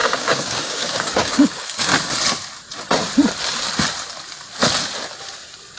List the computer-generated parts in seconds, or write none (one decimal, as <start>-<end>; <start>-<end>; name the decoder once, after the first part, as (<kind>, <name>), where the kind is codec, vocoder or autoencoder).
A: 0.0-1.9 (codec, DAC)